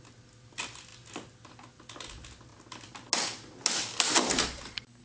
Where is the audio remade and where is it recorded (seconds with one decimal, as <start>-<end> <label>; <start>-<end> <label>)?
0.0-5.0 recorded